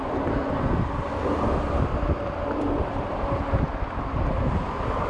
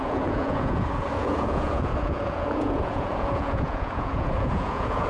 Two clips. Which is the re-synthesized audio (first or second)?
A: second